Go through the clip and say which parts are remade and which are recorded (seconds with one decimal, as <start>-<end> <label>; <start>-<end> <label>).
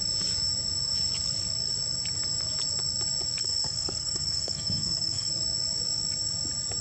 0.0-3.4 recorded; 3.4-5.3 remade; 5.3-6.8 recorded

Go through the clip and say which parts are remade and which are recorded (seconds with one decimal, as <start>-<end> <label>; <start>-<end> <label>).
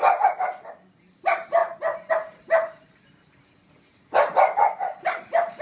0.0-5.6 recorded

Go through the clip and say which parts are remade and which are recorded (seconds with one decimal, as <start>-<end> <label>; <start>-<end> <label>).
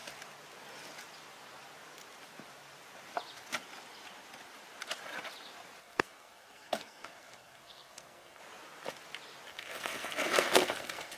0.0-5.8 recorded; 5.8-8.4 remade; 8.4-9.5 recorded; 9.5-11.2 remade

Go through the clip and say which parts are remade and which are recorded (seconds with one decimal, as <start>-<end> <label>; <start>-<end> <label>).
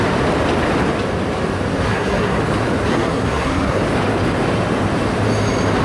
0.0-1.9 recorded; 1.9-2.4 remade; 2.4-2.9 recorded; 2.9-3.8 remade; 3.8-5.8 recorded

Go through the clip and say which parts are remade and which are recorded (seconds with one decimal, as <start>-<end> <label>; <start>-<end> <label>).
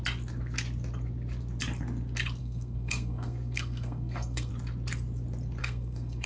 0.0-2.4 recorded; 2.4-4.5 remade; 4.5-5.6 recorded; 5.6-6.3 remade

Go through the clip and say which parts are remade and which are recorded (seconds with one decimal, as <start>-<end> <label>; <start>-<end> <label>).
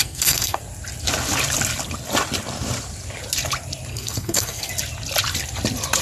0.0-0.6 remade; 0.6-3.9 recorded; 3.9-4.7 remade; 4.7-6.0 recorded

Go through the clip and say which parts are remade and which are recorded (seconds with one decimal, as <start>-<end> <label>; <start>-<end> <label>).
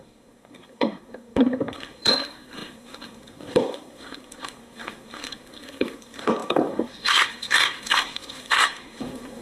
0.0-9.4 remade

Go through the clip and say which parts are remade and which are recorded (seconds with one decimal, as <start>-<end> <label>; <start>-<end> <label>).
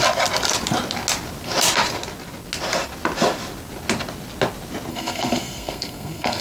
0.0-4.9 recorded; 4.9-6.4 remade